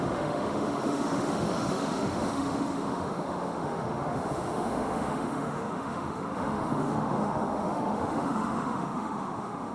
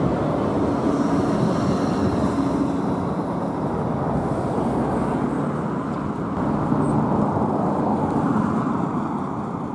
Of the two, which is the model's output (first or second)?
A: first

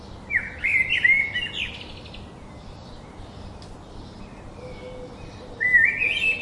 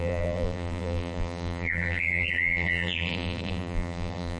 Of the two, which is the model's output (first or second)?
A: second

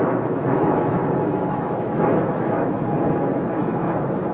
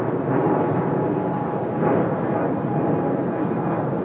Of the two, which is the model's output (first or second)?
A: first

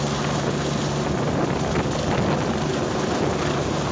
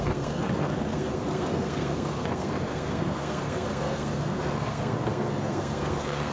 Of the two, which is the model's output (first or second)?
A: second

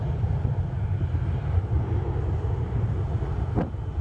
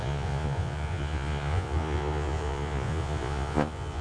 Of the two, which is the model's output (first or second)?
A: second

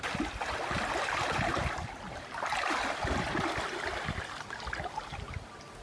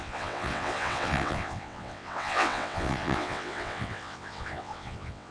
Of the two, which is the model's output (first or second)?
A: second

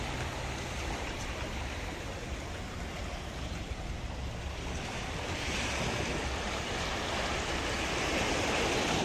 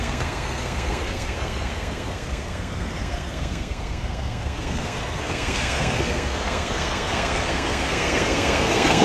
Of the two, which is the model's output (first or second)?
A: second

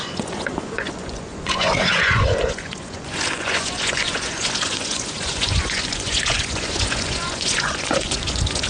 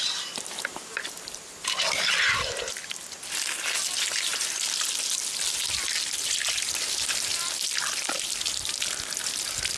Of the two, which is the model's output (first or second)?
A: first